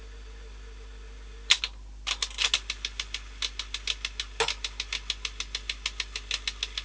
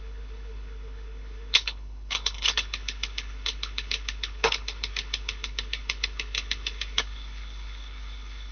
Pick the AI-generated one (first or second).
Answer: second